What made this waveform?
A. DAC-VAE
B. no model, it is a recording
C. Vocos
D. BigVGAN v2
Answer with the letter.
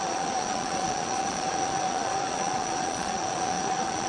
C